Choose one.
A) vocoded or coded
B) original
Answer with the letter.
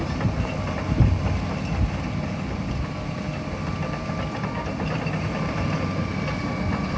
B